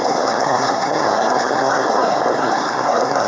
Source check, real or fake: fake